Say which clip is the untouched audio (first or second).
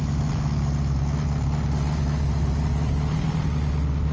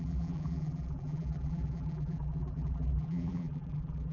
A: first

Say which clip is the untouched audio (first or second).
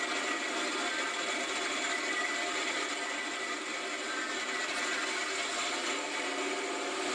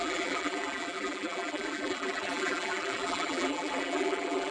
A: first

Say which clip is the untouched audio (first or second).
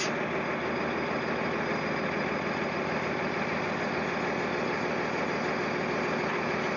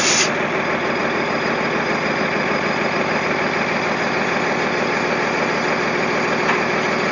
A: first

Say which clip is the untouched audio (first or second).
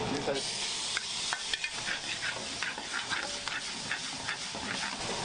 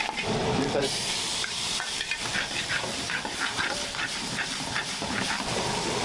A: first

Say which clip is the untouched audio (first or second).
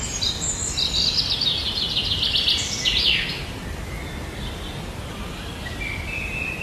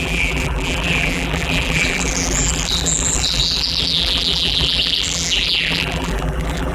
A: first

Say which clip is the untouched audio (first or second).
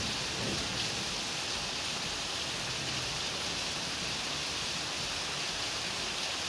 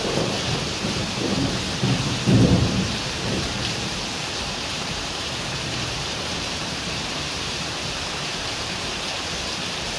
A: first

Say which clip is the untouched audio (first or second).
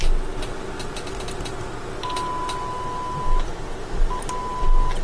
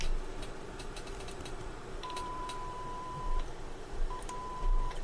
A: first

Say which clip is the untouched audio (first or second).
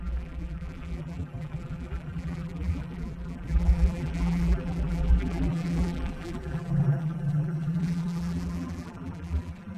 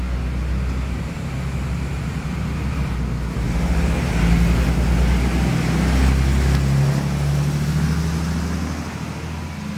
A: second